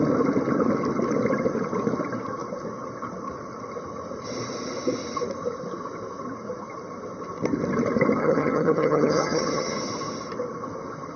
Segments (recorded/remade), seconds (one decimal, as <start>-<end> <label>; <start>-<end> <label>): 0.0-8.2 recorded; 8.2-9.8 remade; 9.8-11.2 recorded